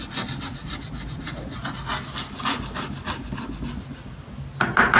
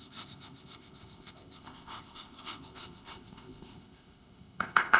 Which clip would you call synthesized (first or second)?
second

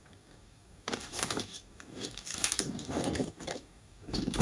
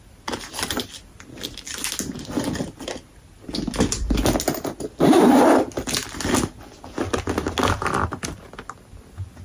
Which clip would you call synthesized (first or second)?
first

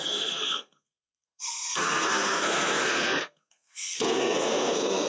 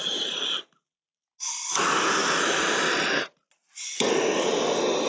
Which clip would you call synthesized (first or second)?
first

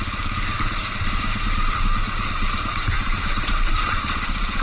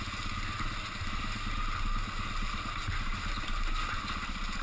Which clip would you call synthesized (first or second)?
first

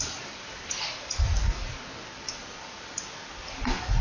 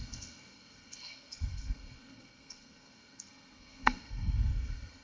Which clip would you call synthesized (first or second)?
second